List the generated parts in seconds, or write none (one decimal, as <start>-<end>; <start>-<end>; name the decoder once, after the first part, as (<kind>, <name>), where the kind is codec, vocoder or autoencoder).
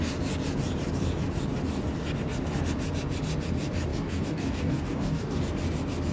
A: 3.9-5.4 (codec, DAC)